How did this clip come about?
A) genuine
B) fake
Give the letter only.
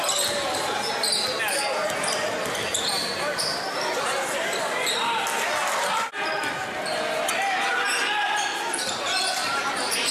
A